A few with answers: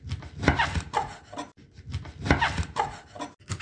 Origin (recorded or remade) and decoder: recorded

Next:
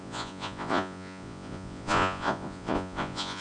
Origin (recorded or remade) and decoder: remade, vocoder, Vocos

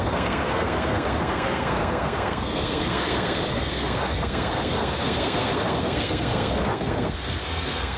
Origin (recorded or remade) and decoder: remade, codec, SNAC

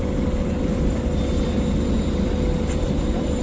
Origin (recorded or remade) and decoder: remade, vocoder, BigVGAN v2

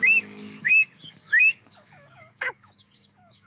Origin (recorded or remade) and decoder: remade, codec, DAC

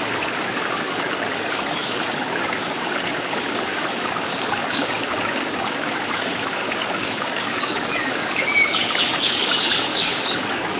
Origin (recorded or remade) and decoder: remade, codec, DAC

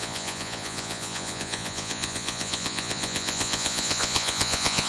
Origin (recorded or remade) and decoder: remade, vocoder, Vocos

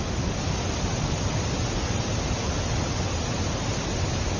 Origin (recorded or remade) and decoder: recorded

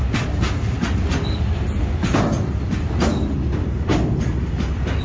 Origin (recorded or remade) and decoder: recorded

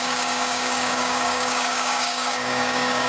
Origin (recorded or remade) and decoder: remade, codec, DAC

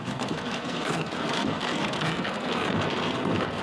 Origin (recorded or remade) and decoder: remade, codec, SNAC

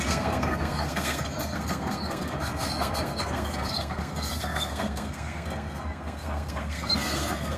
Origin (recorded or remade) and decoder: remade, codec, SNAC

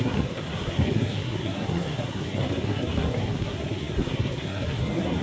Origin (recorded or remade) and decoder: remade, codec, SNAC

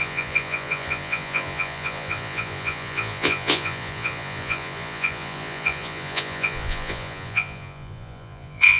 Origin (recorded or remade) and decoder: remade, vocoder, Vocos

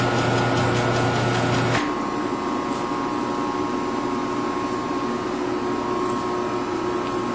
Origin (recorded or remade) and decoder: recorded